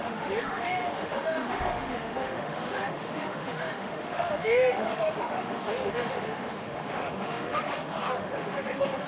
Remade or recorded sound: remade